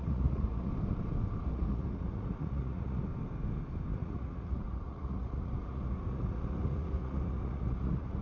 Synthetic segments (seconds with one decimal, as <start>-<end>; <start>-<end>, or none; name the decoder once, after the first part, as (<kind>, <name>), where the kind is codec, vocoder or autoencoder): 0.0-0.7 (vocoder, Vocos); 1.5-3.1; 3.9-8.2